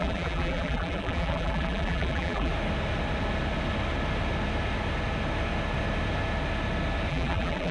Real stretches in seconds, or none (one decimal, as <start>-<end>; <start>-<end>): 2.5-7.1